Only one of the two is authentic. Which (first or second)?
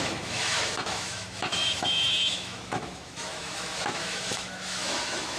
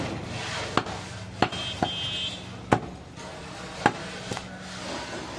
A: second